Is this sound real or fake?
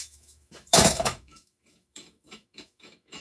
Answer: fake